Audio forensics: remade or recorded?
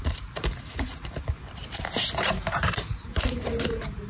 remade